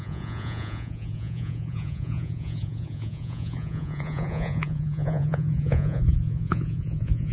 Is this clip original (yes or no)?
no